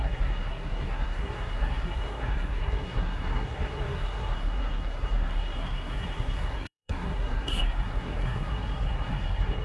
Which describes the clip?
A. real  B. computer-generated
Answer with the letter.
B